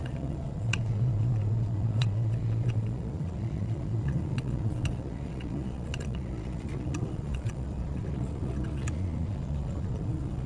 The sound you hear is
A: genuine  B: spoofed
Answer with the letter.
B